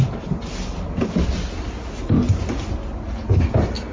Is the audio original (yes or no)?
yes